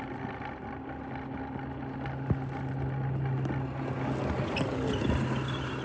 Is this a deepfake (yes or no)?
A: no